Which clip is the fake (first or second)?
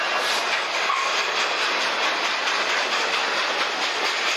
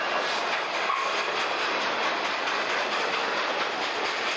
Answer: second